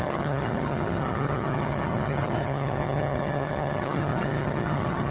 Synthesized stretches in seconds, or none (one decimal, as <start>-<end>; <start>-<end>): 0.0-5.1